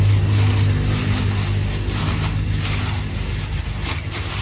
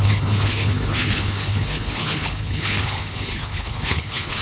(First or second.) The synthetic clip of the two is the second